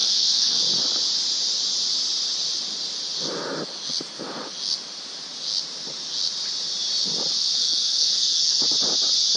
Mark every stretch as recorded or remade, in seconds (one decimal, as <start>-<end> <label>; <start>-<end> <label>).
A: 0.0-0.6 remade; 0.6-7.4 recorded; 7.4-8.6 remade; 8.6-9.4 recorded